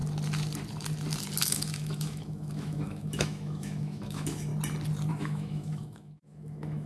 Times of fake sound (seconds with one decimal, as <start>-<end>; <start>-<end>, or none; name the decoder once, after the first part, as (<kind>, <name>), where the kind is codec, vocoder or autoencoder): 1.4-4.5 (autoencoder, DAC-VAE); 5.1-6.9